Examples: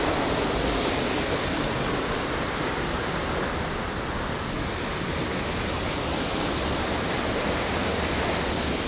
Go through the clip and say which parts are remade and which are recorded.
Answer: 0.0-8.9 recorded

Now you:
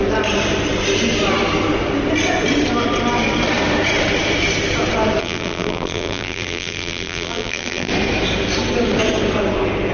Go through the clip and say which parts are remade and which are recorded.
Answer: 0.0-5.2 recorded; 5.2-7.9 remade; 7.9-9.9 recorded

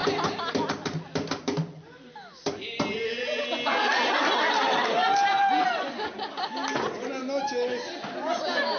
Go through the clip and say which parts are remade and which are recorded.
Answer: 0.0-8.8 recorded

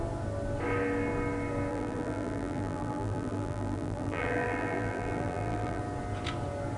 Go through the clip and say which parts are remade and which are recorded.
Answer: 0.0-1.7 recorded; 1.7-5.8 remade; 5.8-6.8 recorded

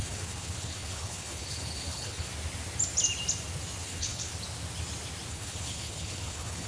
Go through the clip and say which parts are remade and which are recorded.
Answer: 0.0-2.3 remade; 2.3-3.8 recorded; 3.8-4.3 remade; 4.3-5.3 recorded; 5.3-6.7 remade